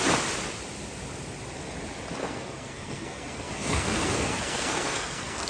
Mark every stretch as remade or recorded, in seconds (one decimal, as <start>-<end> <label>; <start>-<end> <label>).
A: 0.0-2.2 recorded; 2.2-5.5 remade